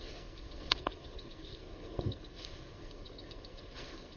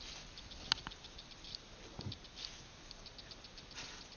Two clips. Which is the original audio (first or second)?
second